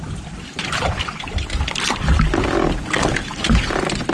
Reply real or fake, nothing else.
real